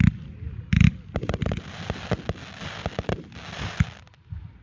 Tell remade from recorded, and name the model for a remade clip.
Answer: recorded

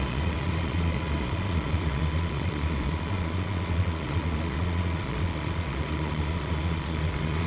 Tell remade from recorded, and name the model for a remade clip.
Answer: remade, vocoder, Vocos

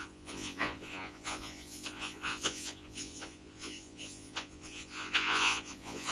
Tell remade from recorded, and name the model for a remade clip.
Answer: remade, vocoder, Vocos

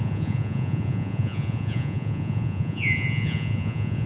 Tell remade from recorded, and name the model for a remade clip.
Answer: remade, vocoder, Vocos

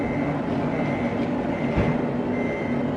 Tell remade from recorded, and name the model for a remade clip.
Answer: recorded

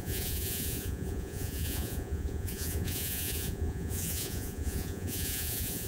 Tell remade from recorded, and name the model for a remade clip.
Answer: remade, vocoder, Vocos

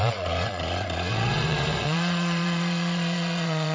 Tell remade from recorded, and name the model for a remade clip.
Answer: remade, vocoder, Vocos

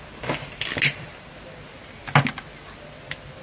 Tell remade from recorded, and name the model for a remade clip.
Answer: recorded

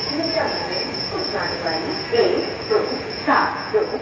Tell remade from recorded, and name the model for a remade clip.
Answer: remade, vocoder, Vocos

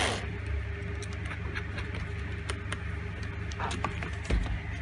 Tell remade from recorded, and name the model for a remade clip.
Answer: recorded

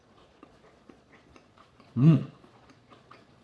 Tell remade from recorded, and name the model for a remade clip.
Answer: remade, vocoder, Vocos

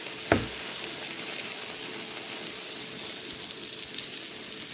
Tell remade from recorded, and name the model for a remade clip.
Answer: recorded